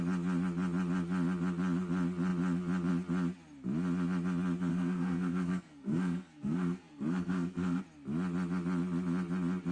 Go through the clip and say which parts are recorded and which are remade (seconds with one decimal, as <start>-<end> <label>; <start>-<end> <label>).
0.0-4.7 recorded; 4.7-7.8 remade; 7.8-9.7 recorded